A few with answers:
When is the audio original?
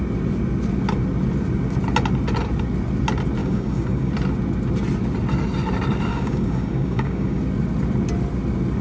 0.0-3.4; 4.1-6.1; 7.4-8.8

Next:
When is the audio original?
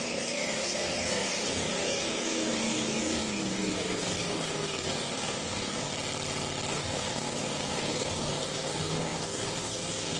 5.9-6.7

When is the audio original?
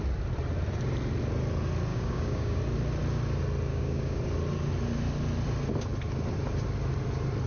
0.0-1.9; 2.6-3.7; 4.2-7.5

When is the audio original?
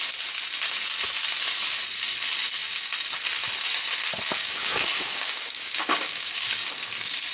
0.0-4.4; 6.5-7.3